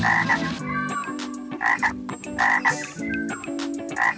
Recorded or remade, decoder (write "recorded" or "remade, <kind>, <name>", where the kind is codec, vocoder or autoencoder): recorded